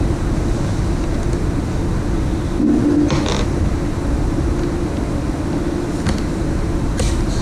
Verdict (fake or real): real